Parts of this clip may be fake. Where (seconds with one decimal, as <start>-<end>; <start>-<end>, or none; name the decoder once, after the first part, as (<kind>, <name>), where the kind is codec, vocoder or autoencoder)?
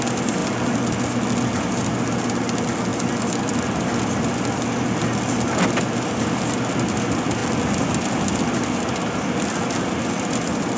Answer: none